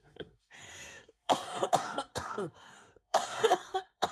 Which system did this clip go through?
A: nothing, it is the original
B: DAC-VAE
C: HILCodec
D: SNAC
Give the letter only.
D